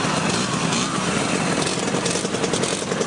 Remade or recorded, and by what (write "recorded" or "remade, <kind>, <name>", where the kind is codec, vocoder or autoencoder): recorded